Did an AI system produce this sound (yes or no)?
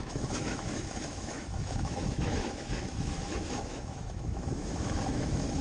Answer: yes